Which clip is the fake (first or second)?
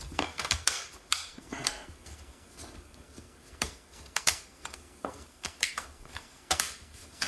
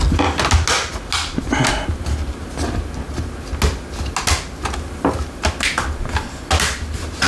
first